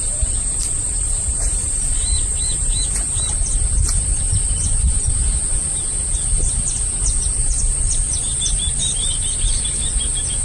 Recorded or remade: remade